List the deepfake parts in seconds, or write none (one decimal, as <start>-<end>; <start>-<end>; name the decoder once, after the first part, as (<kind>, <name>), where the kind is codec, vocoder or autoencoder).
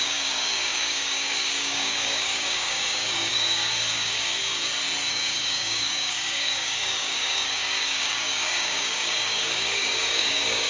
0.0-4.4 (codec, DAC); 5.1-10.7